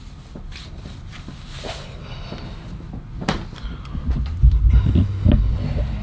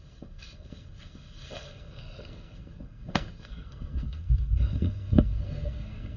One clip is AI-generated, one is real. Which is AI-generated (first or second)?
second